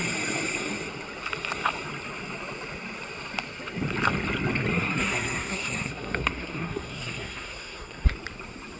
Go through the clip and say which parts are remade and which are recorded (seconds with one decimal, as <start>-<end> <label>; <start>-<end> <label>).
0.0-4.7 recorded; 4.7-8.1 remade; 8.1-8.8 recorded